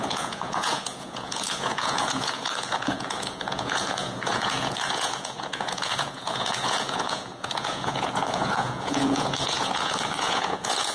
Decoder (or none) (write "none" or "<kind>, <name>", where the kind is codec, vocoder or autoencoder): vocoder, Vocos